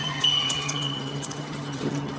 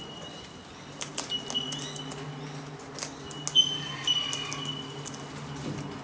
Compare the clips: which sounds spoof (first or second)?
first